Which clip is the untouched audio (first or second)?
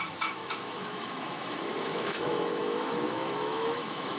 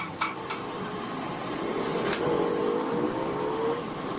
second